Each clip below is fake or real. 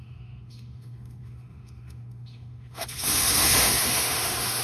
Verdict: fake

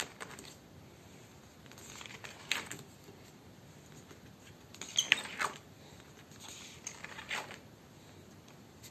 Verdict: real